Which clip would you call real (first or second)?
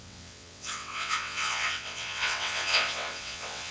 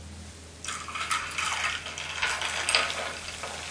second